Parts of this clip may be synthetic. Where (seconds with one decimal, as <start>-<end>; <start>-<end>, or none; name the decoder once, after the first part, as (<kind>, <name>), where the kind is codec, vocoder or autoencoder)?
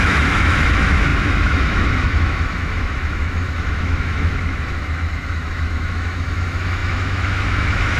0.0-8.0 (autoencoder, DAC-VAE)